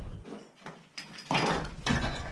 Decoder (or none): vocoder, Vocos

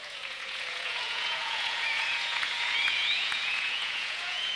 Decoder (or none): vocoder, Vocos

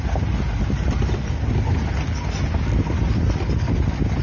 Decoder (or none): none